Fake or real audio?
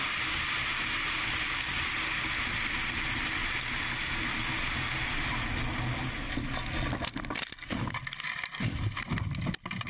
real